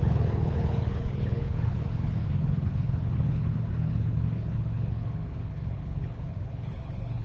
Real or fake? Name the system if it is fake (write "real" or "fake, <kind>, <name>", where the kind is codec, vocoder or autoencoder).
fake, codec, HILCodec